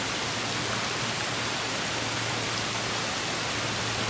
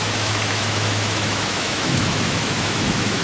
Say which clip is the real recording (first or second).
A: first